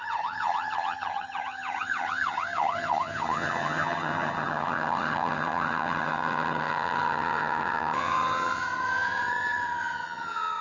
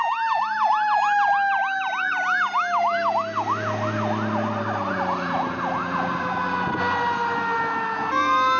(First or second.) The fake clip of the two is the first